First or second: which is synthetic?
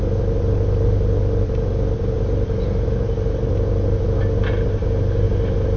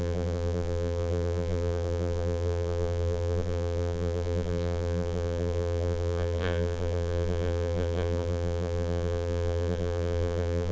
second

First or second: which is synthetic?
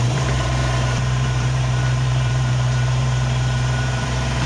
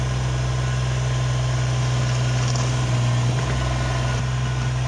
first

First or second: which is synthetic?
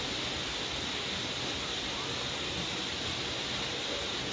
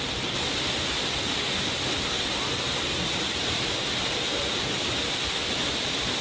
second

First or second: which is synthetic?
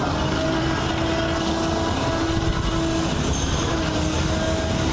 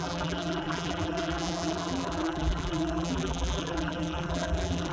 second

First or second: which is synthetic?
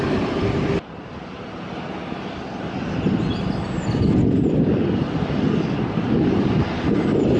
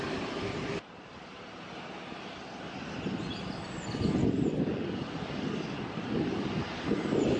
second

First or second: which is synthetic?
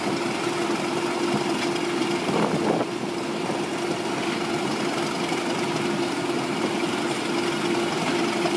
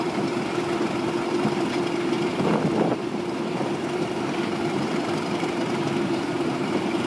second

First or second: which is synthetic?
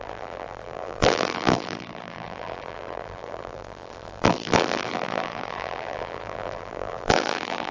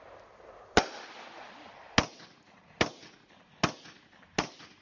first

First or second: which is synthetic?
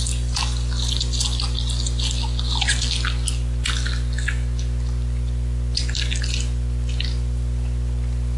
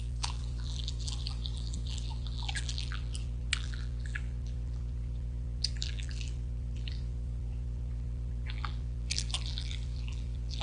second